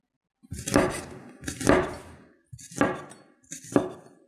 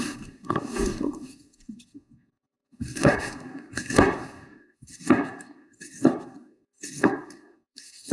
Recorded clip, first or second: first